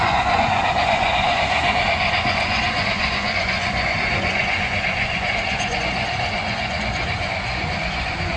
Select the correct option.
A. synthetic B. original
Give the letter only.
A